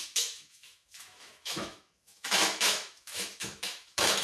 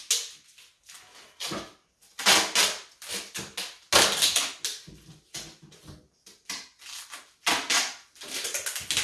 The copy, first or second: first